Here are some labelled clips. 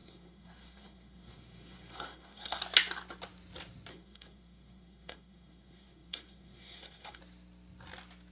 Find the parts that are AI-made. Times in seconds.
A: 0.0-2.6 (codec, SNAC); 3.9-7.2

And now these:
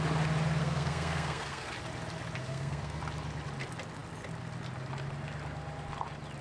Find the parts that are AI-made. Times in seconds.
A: 0.6-1.7 (codec, SNAC); 2.4-3.0

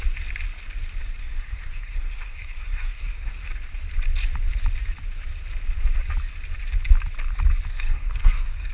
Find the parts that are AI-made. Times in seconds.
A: 1.2-3.3 (codec, SNAC); 7.7-8.7

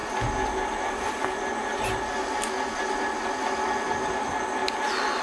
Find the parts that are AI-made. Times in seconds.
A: none

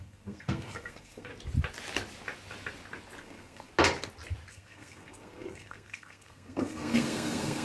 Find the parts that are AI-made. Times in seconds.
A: 0.0-1.3 (codec, SNAC); 3.2-3.7; 4.5-7.6